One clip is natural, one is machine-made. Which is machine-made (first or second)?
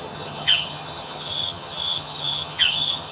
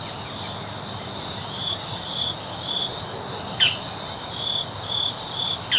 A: first